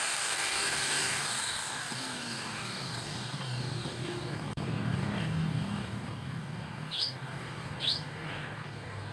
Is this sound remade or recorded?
remade